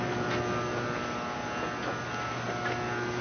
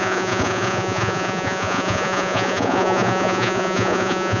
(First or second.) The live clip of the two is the first